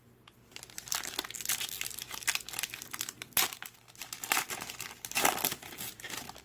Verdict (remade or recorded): recorded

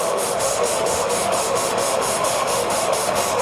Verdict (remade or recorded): remade